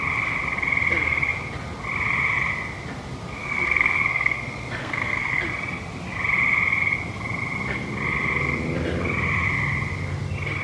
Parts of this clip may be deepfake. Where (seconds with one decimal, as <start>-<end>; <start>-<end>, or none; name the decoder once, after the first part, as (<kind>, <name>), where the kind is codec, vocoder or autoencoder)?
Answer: 3.4-5.4 (codec, SNAC)